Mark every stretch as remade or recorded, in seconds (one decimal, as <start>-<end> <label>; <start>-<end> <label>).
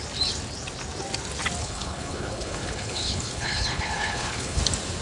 0.0-1.6 recorded; 1.6-4.6 remade; 4.6-5.0 recorded